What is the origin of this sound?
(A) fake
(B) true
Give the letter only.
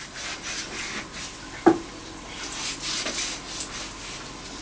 B